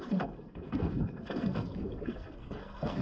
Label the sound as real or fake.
fake